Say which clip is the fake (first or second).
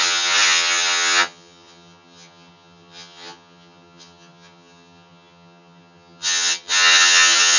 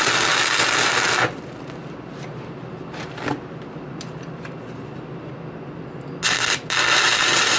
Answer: first